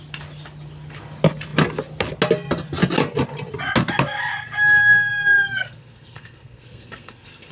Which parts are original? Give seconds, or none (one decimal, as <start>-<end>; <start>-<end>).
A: 0.0-4.8